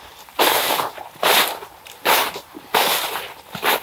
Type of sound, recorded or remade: remade